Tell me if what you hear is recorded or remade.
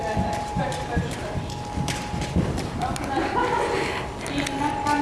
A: recorded